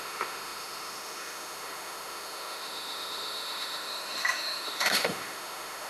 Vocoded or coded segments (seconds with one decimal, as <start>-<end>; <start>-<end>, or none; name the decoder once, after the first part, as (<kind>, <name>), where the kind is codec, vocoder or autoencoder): 0.0-5.9 (autoencoder, DAC-VAE)